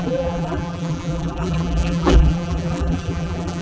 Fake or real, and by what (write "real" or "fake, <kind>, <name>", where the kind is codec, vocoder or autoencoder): fake, vocoder, BigVGAN v2